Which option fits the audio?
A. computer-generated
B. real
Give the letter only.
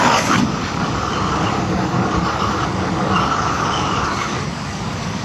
A